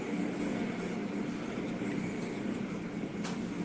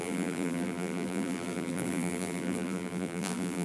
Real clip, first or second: first